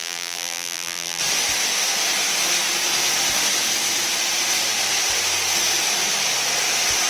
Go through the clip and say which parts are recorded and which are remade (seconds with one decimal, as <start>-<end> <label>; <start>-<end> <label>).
0.0-1.2 remade; 1.2-7.1 recorded